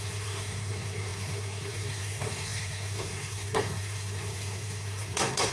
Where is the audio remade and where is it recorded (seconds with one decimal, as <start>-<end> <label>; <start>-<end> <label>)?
0.0-5.5 remade

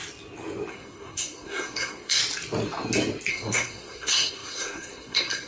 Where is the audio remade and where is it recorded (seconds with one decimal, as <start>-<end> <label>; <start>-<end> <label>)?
0.0-0.7 recorded; 0.7-2.2 remade; 2.2-3.3 recorded; 3.3-5.5 remade

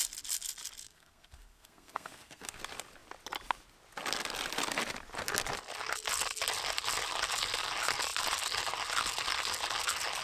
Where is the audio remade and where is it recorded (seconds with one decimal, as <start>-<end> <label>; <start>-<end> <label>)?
0.0-0.8 recorded; 0.8-2.6 remade; 2.6-10.2 recorded

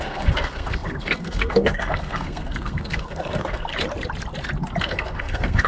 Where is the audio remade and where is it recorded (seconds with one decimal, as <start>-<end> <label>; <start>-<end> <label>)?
0.0-3.7 remade; 3.7-4.8 recorded; 4.8-5.7 remade